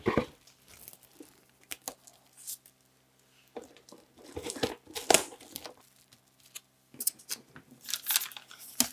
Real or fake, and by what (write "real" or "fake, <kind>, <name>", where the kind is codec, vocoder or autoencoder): real